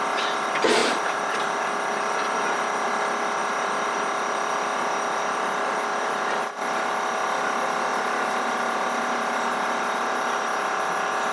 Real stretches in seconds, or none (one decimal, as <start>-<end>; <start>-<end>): 0.0-0.8; 1.9-3.4; 6.4-7.9; 9.5-11.3